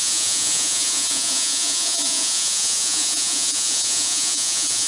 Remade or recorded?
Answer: remade